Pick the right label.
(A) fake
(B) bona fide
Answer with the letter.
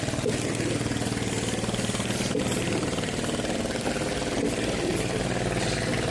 B